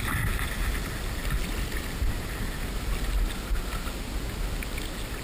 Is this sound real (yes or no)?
yes